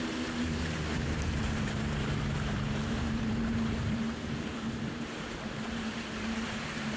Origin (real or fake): fake